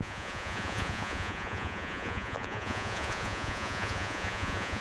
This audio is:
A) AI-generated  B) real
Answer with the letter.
A